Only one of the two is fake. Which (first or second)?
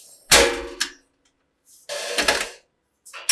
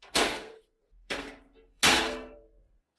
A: second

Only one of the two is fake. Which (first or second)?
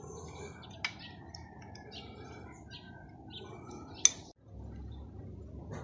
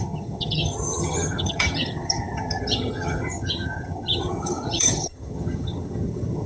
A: second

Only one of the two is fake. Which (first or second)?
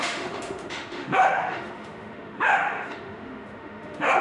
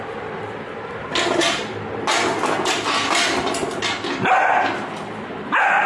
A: first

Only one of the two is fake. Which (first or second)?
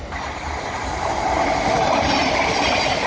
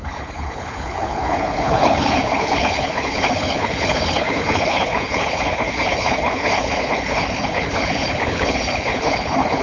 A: second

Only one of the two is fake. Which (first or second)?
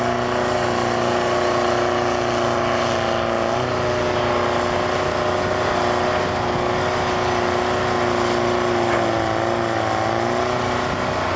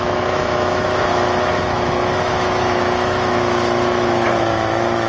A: second